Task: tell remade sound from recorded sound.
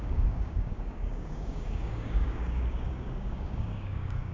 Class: remade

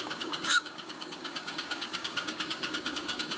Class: remade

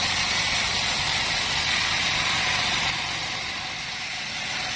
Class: recorded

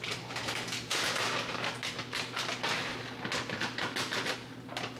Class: recorded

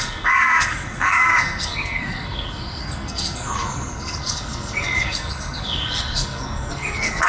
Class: remade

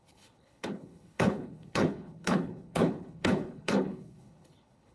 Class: remade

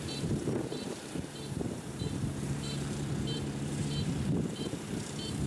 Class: remade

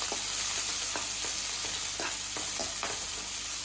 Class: recorded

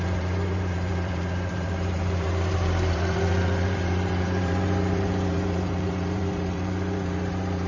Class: remade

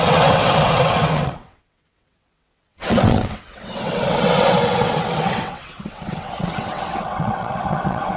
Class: remade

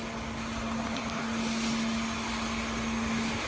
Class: recorded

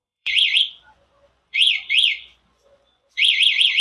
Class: remade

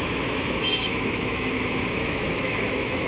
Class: remade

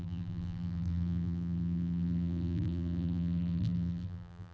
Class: remade